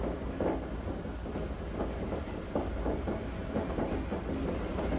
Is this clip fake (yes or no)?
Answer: no